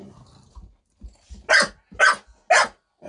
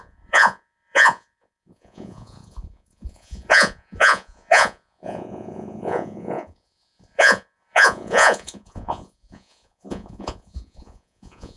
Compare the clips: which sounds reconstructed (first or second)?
second